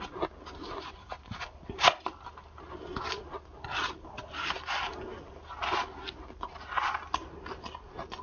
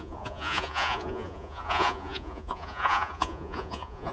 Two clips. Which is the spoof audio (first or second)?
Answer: second